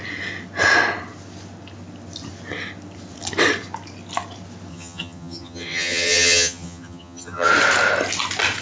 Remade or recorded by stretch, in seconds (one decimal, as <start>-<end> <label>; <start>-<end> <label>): 0.0-4.7 recorded; 4.7-7.5 remade; 7.5-8.6 recorded